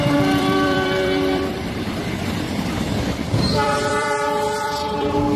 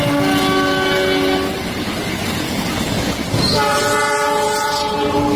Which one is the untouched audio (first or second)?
second